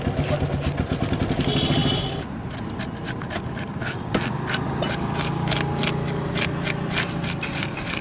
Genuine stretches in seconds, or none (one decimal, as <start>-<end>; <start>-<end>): 0.0-8.0